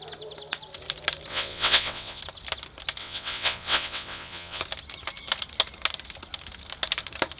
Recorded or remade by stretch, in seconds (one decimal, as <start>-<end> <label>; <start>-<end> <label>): 0.0-1.3 recorded; 1.3-2.2 remade; 2.2-3.0 recorded; 3.0-4.6 remade; 4.6-7.4 recorded